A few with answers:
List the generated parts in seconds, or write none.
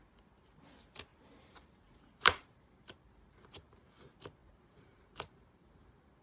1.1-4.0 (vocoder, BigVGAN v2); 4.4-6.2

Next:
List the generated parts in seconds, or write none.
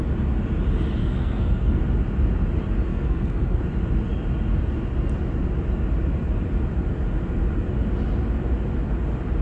1.0-1.8 (codec, SNAC); 2.9-3.6